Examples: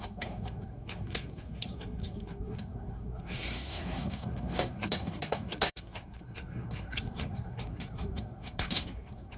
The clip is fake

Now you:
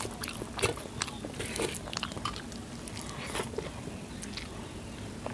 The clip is real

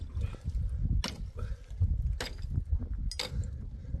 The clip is real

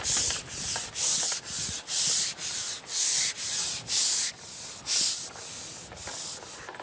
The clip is real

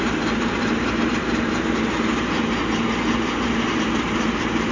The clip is fake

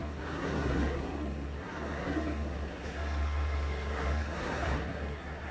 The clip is fake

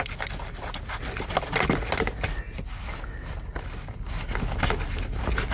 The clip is real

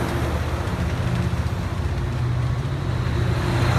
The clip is real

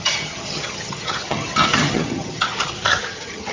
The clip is fake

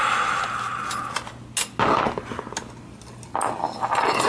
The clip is real